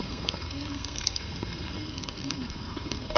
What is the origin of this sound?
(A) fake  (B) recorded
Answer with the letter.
A